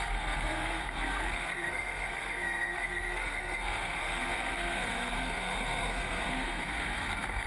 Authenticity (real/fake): fake